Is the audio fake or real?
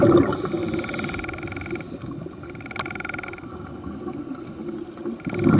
real